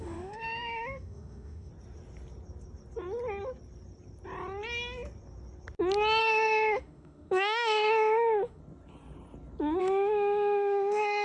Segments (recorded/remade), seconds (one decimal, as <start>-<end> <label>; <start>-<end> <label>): 0.0-1.7 remade; 1.7-6.2 recorded; 6.2-8.6 remade; 8.6-9.8 recorded; 9.8-11.2 remade